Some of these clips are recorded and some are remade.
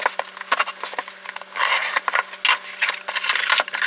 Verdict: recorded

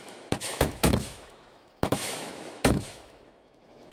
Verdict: remade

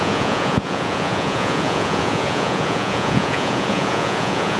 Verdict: remade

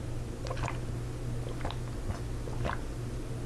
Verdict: recorded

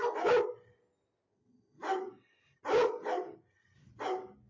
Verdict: recorded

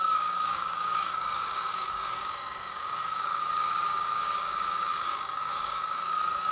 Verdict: remade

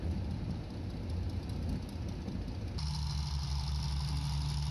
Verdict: recorded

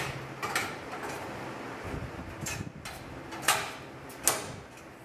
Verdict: recorded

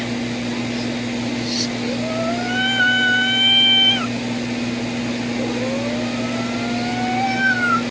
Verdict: recorded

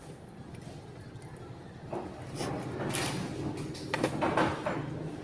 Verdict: recorded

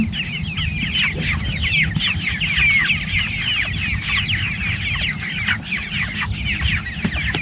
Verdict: recorded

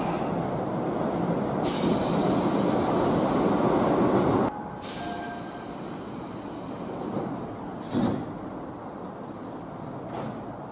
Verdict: recorded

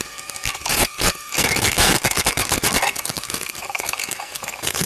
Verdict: remade